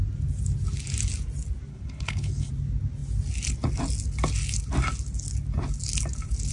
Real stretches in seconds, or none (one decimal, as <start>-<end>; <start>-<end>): 0.0-1.7; 2.5-6.5